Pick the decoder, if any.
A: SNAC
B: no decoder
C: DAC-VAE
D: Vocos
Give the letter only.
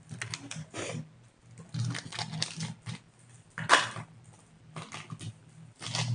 B